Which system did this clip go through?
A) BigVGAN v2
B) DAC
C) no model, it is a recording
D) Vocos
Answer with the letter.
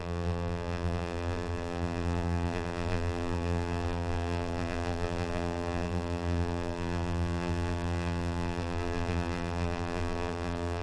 A